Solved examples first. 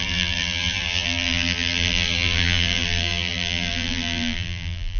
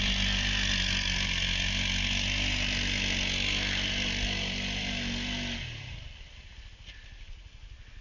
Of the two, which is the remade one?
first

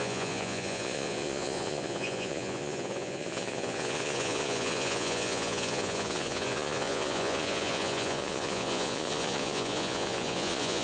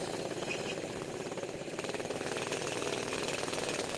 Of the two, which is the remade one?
first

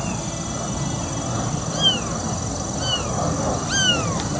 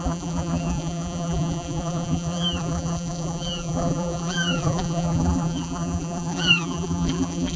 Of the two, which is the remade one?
second